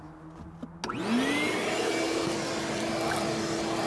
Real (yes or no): yes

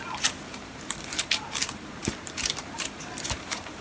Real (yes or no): no